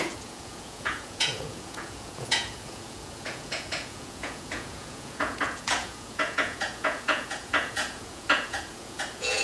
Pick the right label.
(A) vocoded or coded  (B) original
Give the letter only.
A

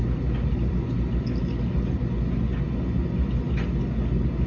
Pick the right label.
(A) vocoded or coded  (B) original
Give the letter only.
B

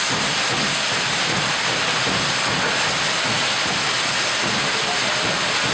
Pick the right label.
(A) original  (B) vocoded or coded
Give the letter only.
A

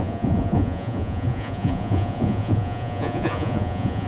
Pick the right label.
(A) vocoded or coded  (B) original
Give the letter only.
A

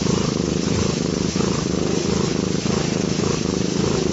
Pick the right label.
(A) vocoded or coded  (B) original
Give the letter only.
B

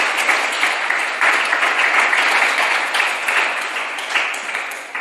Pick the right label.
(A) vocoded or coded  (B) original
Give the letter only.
A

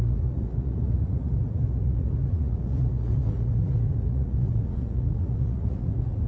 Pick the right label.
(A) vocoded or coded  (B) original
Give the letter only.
A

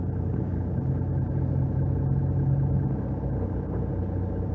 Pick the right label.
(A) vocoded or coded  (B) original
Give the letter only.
B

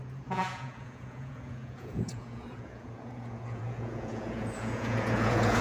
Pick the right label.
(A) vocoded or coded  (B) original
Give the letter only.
A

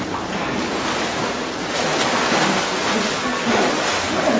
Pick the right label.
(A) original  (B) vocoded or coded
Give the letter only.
A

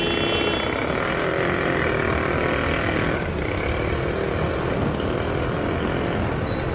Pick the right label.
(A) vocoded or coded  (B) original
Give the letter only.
B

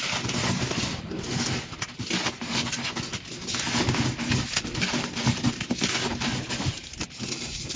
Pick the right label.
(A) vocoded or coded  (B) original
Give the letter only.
B